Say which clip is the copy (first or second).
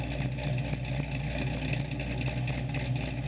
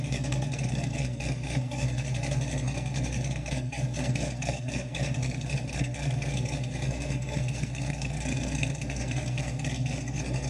second